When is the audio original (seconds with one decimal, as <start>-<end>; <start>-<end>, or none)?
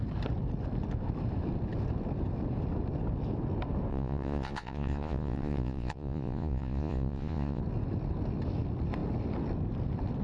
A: 0.0-3.9; 7.6-10.2